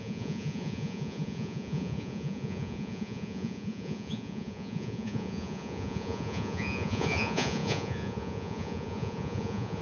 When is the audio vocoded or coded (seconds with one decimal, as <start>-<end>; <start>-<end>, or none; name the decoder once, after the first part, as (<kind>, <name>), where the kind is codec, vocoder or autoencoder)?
0.0-9.8 (vocoder, Vocos)